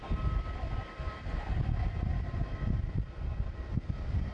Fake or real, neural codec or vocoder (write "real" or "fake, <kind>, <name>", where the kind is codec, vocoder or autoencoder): real